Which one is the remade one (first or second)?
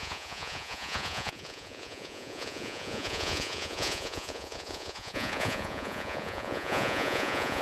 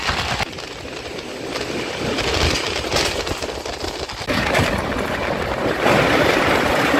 first